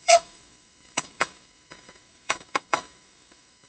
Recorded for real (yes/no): no